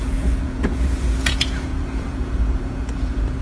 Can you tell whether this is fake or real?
fake